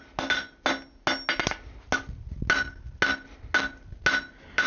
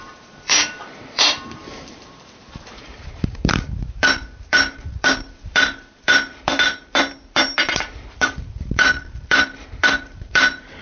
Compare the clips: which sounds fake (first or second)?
second